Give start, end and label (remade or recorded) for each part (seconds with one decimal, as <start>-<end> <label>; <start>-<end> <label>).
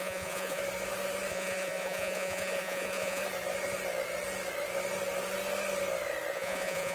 0.0-0.6 remade; 0.6-1.3 recorded; 1.3-3.2 remade; 3.2-6.3 recorded; 6.3-6.9 remade